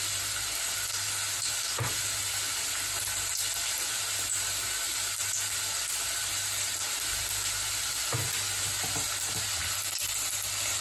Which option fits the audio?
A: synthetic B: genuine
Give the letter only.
B